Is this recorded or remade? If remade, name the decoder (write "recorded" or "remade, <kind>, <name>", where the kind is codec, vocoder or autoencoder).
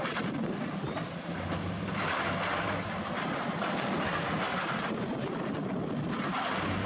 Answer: recorded